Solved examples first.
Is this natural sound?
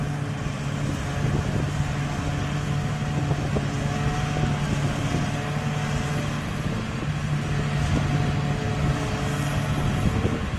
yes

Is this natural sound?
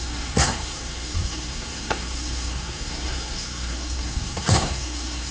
no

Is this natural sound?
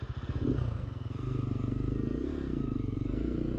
no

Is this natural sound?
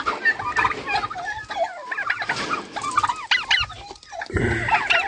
yes